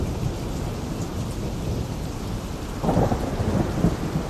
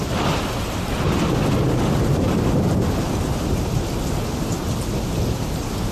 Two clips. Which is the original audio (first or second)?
second